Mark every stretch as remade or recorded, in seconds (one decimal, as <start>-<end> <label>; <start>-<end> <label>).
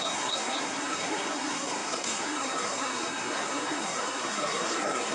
0.0-5.1 remade